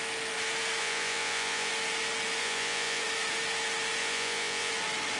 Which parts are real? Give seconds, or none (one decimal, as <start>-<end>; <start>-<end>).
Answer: 0.0-0.8; 1.7-2.4; 3.0-4.0; 4.7-5.2